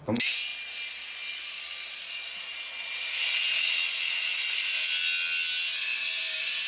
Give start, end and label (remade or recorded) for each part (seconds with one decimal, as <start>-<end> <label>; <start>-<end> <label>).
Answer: 0.0-6.7 recorded